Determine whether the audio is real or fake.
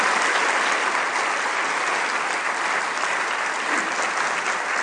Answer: real